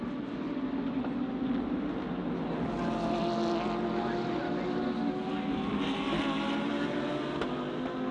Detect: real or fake real